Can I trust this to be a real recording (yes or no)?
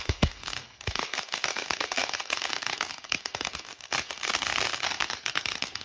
no